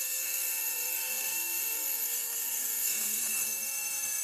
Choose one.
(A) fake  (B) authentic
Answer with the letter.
A